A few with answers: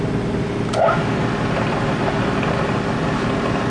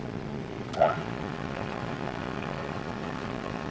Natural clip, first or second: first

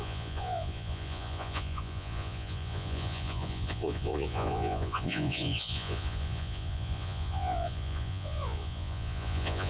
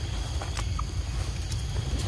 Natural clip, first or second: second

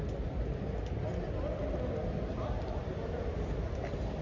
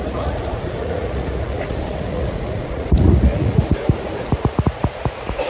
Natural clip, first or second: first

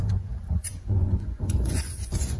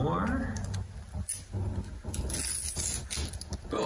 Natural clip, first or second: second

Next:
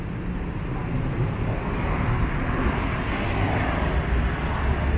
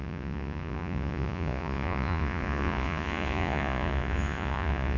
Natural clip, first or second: first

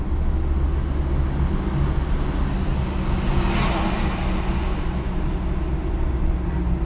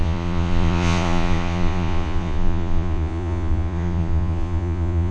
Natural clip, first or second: first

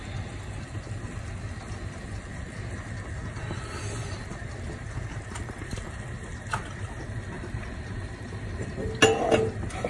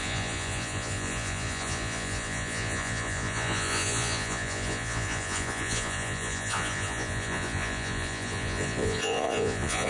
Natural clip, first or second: first